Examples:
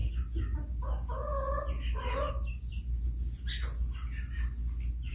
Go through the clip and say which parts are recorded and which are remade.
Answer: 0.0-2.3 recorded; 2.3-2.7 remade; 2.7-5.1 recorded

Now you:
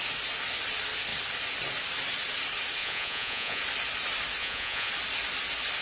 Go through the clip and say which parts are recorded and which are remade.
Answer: 0.0-2.8 recorded; 2.8-3.6 remade; 3.6-4.4 recorded; 4.4-4.9 remade; 4.9-5.8 recorded

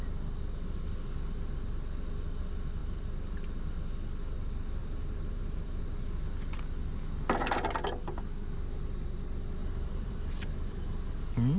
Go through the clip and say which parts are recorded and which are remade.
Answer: 0.0-2.8 recorded; 2.8-3.3 remade; 3.3-4.8 recorded; 4.8-5.8 remade; 5.8-9.6 recorded; 9.6-11.0 remade; 11.0-11.6 recorded

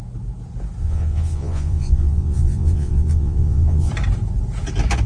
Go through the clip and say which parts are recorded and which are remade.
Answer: 0.0-0.8 recorded; 0.8-3.9 remade; 3.9-5.1 recorded

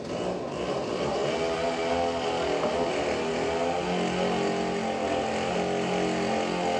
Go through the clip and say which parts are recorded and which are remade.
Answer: 0.0-6.8 recorded

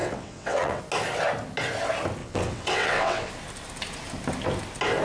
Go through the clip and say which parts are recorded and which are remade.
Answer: 0.0-0.8 remade; 0.8-2.2 recorded; 2.2-3.3 remade; 3.3-5.0 recorded

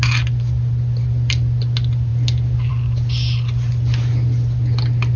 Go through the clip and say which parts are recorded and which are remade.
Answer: 0.0-5.2 recorded

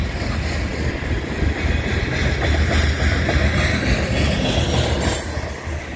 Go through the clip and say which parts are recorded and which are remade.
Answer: 0.0-6.0 recorded